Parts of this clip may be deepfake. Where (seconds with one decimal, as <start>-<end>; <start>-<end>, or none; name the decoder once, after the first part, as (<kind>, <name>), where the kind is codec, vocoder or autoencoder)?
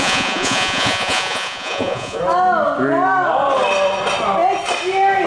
0.0-2.2 (vocoder, Vocos)